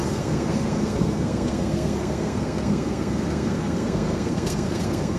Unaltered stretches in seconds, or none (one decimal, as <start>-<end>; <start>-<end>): none